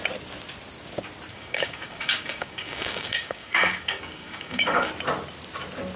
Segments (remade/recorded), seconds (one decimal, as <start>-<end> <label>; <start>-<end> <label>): 0.0-1.3 recorded; 1.3-4.9 remade; 4.9-6.0 recorded

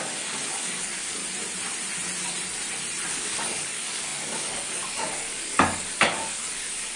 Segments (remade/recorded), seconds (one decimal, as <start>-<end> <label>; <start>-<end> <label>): 0.0-1.2 remade; 1.2-3.1 recorded; 3.1-7.0 remade

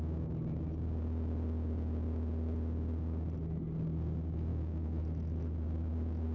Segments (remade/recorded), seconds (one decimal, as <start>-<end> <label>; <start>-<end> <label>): 0.0-4.5 recorded; 4.5-5.0 remade; 5.0-6.3 recorded

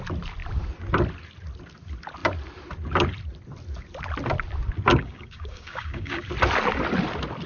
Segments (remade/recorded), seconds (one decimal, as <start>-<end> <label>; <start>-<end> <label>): 0.0-4.9 recorded; 4.9-6.2 remade; 6.2-7.5 recorded

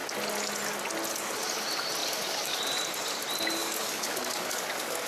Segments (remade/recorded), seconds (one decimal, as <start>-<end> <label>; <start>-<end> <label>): 0.0-2.0 recorded; 2.0-2.6 remade; 2.6-3.6 recorded; 3.6-5.1 remade